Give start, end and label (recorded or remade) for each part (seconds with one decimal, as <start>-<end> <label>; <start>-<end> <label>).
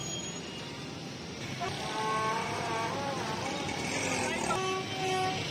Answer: 0.0-5.5 recorded